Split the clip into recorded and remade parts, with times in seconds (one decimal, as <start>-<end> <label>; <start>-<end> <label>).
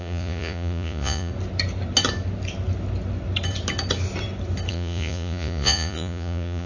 0.0-1.3 remade; 1.3-4.7 recorded; 4.7-6.7 remade